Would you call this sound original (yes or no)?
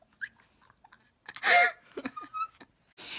yes